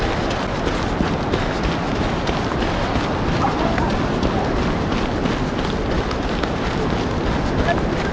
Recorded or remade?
recorded